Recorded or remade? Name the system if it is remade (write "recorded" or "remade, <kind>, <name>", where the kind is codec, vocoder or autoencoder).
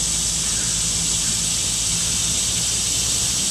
recorded